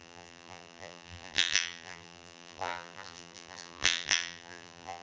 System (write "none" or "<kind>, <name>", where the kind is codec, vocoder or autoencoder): vocoder, BigVGAN v2